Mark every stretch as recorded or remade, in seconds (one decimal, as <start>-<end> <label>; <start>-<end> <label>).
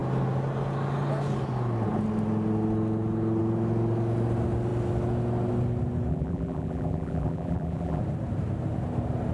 0.0-6.1 recorded; 6.1-8.0 remade; 8.0-9.3 recorded